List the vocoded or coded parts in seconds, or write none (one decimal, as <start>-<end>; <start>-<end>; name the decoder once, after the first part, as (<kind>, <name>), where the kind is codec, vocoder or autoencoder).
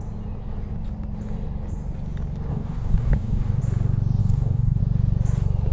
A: 2.5-3.6 (codec, DAC); 4.2-4.8